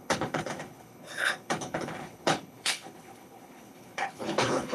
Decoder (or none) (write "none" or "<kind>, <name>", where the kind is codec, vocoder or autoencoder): codec, HILCodec